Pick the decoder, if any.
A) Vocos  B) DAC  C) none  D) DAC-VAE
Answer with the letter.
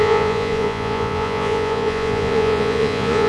A